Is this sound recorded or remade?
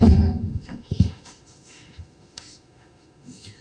remade